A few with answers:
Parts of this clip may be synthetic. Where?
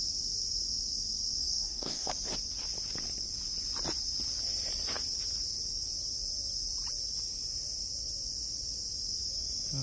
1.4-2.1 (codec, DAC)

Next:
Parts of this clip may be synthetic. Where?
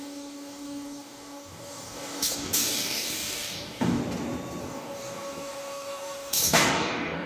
0.0-4.0 (codec, DAC); 4.6-7.3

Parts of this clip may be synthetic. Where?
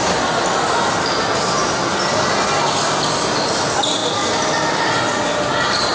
none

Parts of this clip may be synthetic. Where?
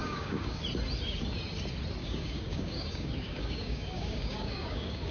0.0-0.6 (codec, DAC); 2.0-5.1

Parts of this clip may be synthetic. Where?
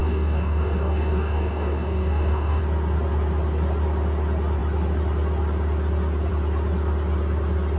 0.0-2.6 (codec, DAC)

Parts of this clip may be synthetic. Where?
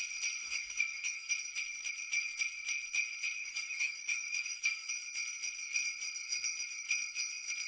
0.4-1.3 (codec, DAC); 3.4-4.9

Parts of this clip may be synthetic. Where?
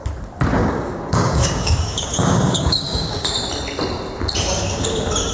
0.5-3.3 (codec, DAC)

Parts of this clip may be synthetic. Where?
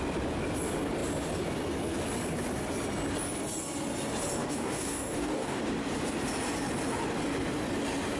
4.4-5.6 (codec, DAC)